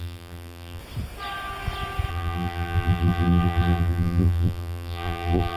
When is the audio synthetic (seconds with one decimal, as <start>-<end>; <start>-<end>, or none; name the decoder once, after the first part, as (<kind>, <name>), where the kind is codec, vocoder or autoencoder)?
0.0-0.8 (vocoder, BigVGAN v2); 2.1-5.6